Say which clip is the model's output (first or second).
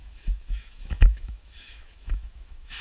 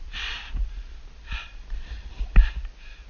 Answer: first